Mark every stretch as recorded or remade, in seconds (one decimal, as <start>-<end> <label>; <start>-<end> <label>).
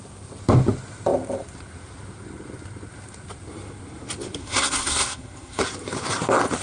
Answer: 0.0-4.4 recorded; 4.4-5.6 remade; 5.6-6.6 recorded